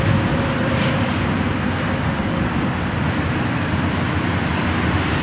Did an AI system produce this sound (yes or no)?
no